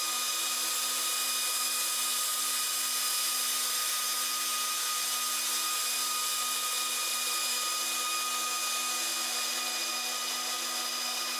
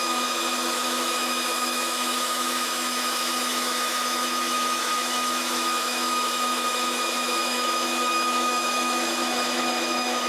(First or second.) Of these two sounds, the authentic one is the first